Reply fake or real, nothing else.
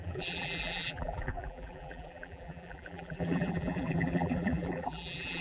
fake